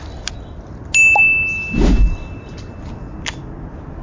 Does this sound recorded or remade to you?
recorded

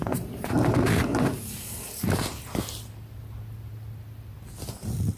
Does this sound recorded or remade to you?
recorded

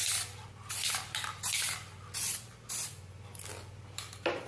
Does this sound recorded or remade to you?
remade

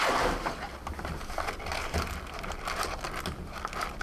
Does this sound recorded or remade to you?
recorded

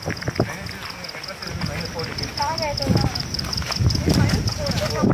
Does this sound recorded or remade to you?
recorded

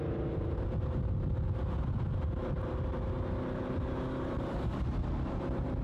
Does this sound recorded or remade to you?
recorded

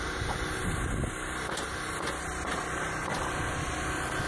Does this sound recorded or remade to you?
recorded